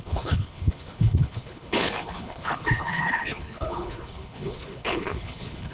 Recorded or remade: remade